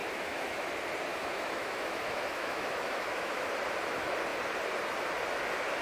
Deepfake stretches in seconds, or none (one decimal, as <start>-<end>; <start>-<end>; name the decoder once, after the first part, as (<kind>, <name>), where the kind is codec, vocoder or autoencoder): 0.0-0.7 (autoencoder, DAC-VAE); 1.1-3.5